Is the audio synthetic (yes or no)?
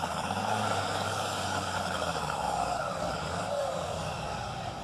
yes